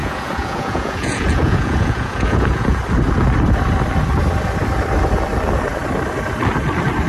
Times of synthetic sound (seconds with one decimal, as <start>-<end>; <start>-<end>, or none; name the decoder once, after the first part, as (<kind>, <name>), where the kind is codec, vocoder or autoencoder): 0.0-2.8 (vocoder, Vocos)